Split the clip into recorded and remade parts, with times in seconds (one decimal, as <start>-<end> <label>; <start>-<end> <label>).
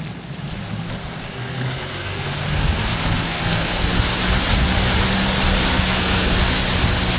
0.0-1.0 recorded; 1.0-3.8 remade; 3.8-5.7 recorded; 5.7-6.5 remade; 6.5-7.2 recorded